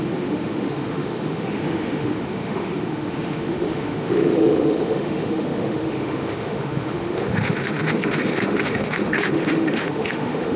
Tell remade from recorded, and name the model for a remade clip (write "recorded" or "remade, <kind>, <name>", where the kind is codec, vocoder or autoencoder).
remade, autoencoder, DAC-VAE